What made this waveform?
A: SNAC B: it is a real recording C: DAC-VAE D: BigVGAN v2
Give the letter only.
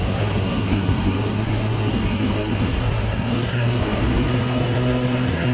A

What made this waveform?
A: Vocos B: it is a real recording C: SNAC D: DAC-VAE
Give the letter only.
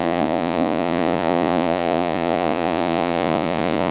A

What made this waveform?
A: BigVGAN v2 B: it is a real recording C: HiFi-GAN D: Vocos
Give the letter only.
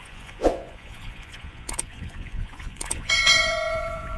D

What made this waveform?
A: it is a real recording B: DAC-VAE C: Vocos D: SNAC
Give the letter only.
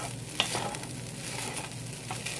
A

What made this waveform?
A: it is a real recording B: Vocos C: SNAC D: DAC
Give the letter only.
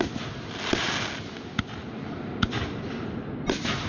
A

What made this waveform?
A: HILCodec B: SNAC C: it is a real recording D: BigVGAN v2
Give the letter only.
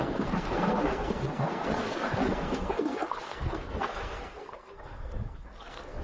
B